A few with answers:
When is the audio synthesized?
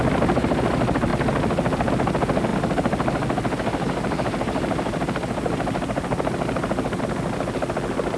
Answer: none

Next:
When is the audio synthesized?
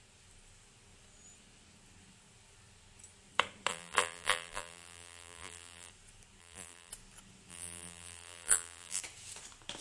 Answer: 3.7-5.9 (vocoder, BigVGAN v2); 6.4-6.9; 7.5-9.0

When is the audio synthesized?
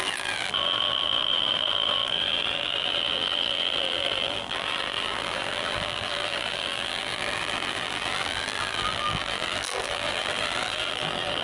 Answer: 0.0-11.4 (vocoder, BigVGAN v2)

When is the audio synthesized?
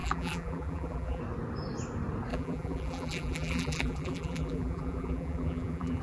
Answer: 0.0-1.2 (vocoder, BigVGAN v2); 2.3-6.0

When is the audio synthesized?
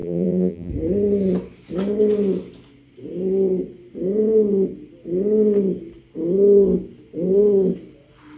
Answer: 0.0-0.7 (vocoder, BigVGAN v2)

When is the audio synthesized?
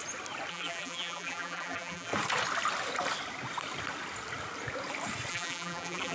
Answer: 0.5-2.1 (vocoder, BigVGAN v2); 5.3-6.1